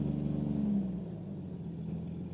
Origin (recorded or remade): recorded